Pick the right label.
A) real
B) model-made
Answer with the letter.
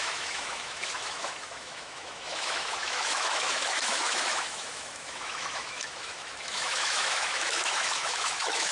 B